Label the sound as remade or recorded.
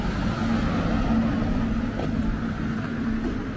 recorded